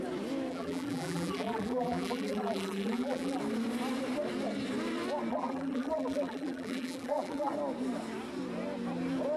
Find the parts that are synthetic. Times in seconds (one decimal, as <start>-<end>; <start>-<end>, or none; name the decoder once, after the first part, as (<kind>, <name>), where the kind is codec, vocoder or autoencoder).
0.5-3.4 (vocoder, BigVGAN v2); 5.3-7.5